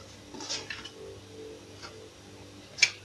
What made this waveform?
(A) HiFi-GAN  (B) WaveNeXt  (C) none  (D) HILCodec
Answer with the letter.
C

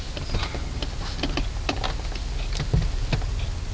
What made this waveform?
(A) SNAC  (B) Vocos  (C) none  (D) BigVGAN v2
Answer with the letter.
C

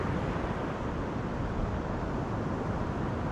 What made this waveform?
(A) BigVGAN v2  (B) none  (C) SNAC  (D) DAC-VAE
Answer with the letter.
B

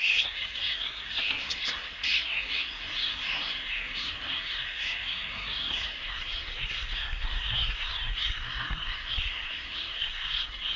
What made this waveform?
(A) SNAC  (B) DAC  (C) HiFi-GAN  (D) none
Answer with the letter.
A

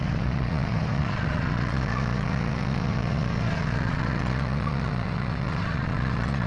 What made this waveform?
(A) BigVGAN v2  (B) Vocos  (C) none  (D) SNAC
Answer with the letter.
B